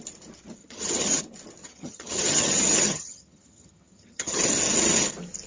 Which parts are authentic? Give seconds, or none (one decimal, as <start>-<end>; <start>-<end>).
0.0-0.6; 1.2-1.6; 4.4-5.5